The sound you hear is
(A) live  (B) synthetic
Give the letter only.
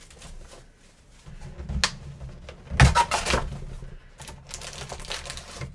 A